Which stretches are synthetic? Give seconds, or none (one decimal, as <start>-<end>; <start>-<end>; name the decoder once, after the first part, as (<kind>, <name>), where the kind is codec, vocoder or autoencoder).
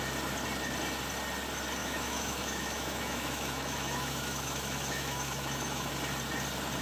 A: 1.8-5.9 (autoencoder, DAC-VAE)